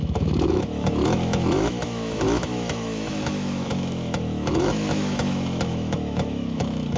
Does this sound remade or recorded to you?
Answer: remade